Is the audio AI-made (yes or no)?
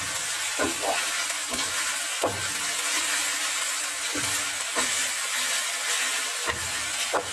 no